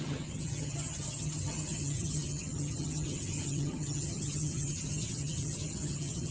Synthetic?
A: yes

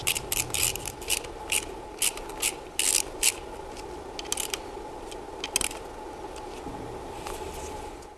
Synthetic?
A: no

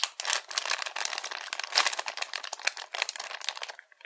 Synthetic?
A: no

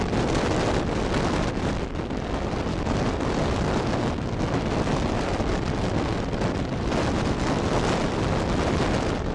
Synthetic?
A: no